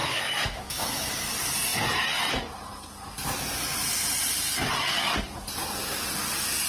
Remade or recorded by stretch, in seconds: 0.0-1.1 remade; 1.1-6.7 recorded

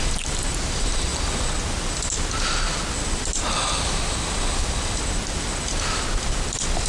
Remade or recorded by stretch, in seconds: 0.0-1.1 remade; 1.1-4.0 recorded; 4.0-6.9 remade